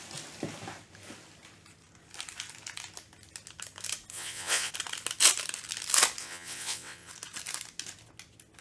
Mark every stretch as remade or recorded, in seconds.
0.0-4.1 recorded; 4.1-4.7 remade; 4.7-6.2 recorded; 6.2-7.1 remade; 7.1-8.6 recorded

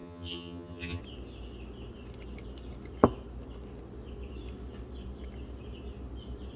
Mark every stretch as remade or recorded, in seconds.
0.0-1.0 remade; 1.0-6.6 recorded

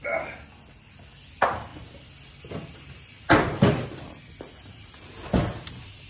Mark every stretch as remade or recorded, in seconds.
0.0-6.1 recorded